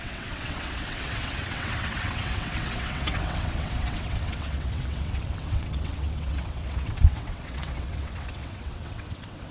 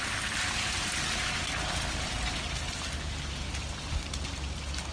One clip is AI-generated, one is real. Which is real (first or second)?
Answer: second